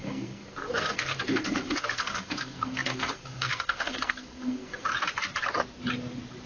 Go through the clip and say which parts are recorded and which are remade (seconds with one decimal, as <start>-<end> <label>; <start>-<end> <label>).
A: 0.0-4.9 remade; 4.9-6.5 recorded